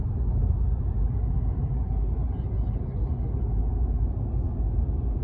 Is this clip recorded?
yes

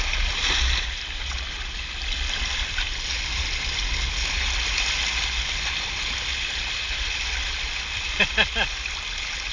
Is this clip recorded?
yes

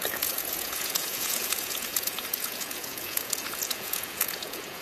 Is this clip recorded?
no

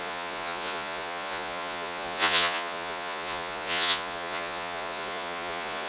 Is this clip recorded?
no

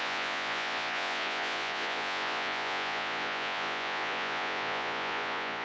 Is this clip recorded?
no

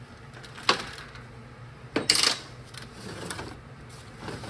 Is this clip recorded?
yes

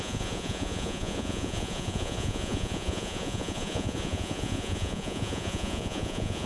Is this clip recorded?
no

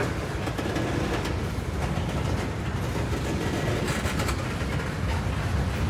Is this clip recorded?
yes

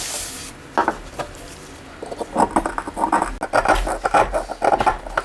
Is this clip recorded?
yes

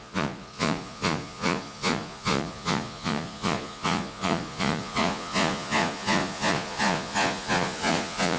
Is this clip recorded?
no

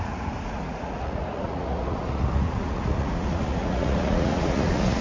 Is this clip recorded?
no